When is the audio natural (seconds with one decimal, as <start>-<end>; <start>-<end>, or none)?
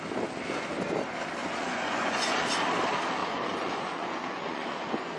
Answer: 0.0-1.4; 2.4-3.2